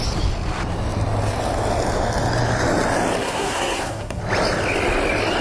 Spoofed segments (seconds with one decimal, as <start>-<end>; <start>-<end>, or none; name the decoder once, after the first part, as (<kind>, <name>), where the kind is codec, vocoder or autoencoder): 3.2-4.2 (codec, SNAC)